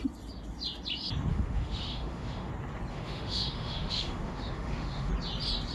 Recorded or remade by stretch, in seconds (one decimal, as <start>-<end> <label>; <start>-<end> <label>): 0.0-1.3 recorded; 1.3-2.5 remade; 2.5-2.9 recorded; 2.9-5.1 remade; 5.1-5.7 recorded